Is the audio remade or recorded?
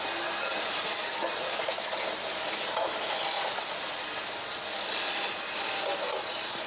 recorded